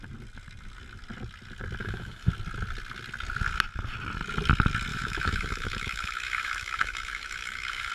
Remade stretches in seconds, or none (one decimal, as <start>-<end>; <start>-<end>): 1.8-2.3; 4.9-7.9